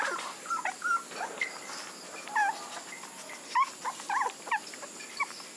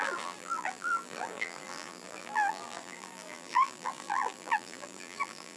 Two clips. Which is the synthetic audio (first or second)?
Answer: second